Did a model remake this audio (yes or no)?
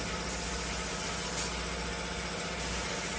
no